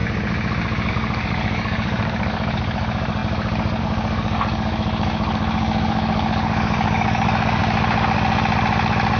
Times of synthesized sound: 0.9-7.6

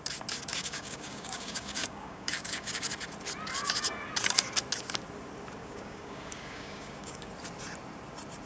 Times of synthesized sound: 0.5-2.8; 5.6-7.3